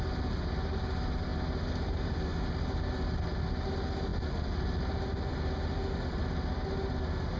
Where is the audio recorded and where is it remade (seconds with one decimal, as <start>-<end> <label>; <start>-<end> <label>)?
0.0-7.4 recorded